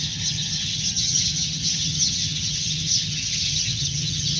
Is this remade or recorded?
remade